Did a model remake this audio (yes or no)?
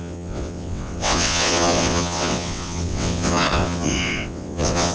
yes